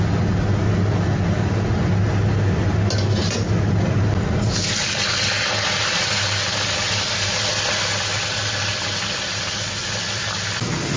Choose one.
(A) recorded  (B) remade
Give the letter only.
A